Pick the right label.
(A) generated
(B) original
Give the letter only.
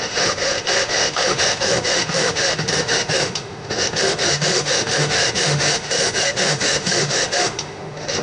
A